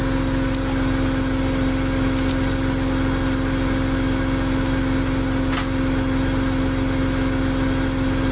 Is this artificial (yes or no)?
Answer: no